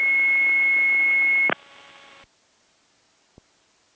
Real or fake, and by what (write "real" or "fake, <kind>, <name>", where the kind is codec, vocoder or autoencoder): real